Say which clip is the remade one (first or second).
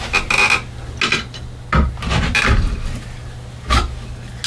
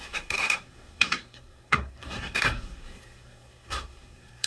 second